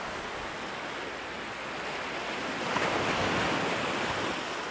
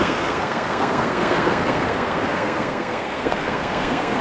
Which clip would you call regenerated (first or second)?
second